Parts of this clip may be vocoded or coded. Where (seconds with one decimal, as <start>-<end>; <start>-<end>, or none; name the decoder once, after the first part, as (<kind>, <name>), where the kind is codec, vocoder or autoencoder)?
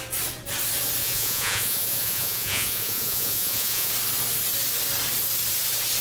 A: 1.0-3.9 (vocoder, Vocos)